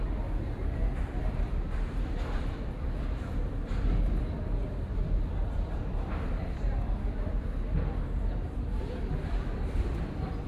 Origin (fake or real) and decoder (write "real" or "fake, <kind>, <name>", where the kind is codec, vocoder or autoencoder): fake, vocoder, BigVGAN v2